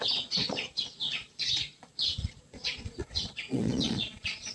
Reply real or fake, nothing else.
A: fake